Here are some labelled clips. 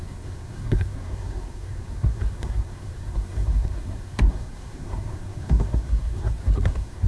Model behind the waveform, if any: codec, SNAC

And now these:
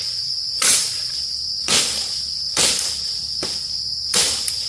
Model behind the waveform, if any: none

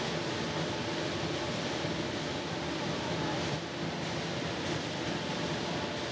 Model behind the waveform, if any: none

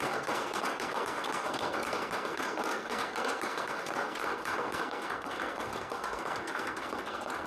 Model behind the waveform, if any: codec, SNAC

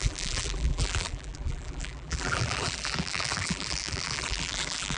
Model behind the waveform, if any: vocoder, BigVGAN v2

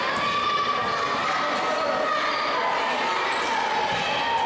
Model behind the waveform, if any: none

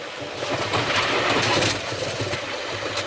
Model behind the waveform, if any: none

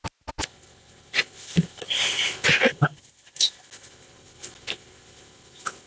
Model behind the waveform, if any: none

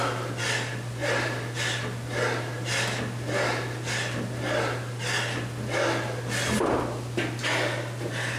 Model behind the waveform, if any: none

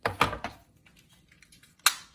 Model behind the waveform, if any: none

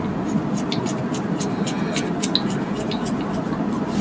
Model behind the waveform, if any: none